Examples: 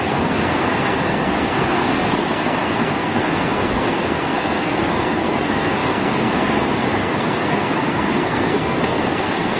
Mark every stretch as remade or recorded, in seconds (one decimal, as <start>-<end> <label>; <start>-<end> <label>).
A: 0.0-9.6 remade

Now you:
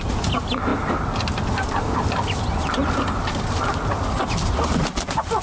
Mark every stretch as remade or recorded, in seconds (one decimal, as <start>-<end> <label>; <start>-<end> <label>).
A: 0.0-5.4 recorded

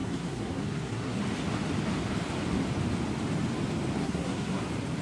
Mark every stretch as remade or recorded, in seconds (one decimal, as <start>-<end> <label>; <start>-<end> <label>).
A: 0.0-1.2 remade; 1.2-4.0 recorded; 4.0-4.6 remade; 4.6-5.0 recorded

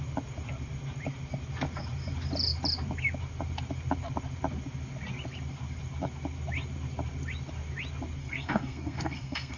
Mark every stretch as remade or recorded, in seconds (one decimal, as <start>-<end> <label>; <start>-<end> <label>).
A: 0.0-8.2 recorded; 8.2-9.6 remade

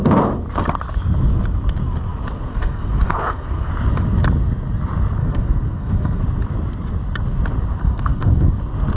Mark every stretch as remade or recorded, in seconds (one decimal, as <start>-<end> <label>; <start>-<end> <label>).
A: 0.0-2.5 recorded; 2.5-3.7 remade; 3.7-5.2 recorded; 5.2-6.2 remade; 6.2-7.8 recorded; 7.8-8.5 remade; 8.5-9.0 recorded

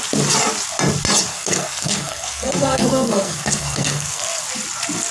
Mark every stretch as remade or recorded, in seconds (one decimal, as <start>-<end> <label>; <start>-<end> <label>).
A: 0.0-1.3 recorded; 1.3-4.4 remade; 4.4-5.1 recorded